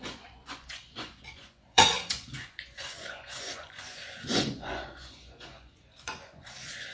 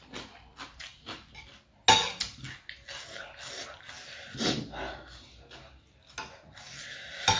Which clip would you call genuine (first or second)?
second